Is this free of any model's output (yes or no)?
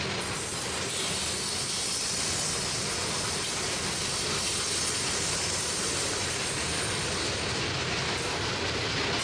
yes